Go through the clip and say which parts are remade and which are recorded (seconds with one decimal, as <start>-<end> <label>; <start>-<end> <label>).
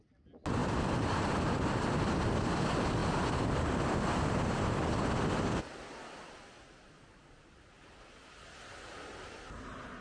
0.0-10.0 recorded